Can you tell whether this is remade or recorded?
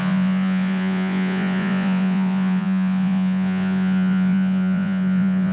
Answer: remade